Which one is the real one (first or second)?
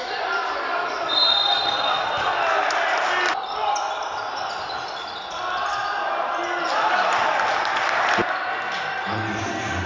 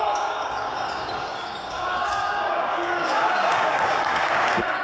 first